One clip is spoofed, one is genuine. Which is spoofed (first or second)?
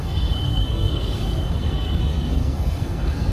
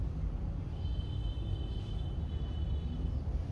first